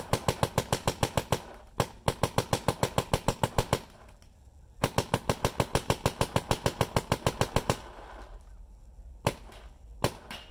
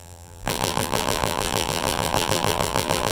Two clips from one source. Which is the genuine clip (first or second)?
first